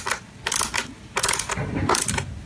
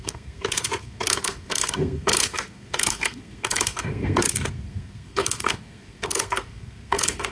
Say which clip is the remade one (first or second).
second